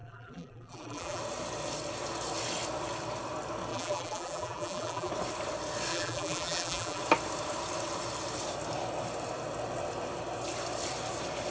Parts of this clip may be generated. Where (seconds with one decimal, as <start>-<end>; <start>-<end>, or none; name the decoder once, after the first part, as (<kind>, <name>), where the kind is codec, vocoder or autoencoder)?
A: 0.0-1.2 (vocoder, BigVGAN v2); 3.7-5.1; 5.9-7.0